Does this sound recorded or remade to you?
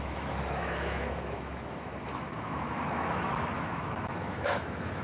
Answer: remade